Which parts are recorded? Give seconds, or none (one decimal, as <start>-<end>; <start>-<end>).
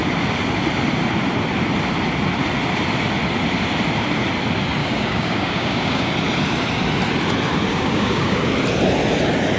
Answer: 0.0-4.8; 6.1-7.7; 8.4-9.6